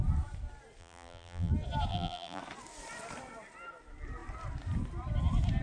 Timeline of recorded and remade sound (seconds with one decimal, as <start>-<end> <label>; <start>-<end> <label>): 0.0-0.8 recorded; 0.8-1.5 remade; 1.5-1.9 recorded; 1.9-2.4 remade; 2.4-5.6 recorded